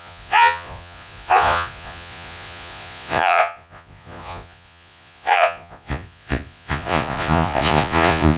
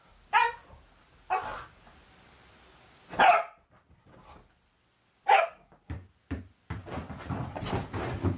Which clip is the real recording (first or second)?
second